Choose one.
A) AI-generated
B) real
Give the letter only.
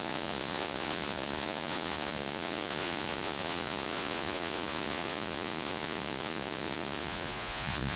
A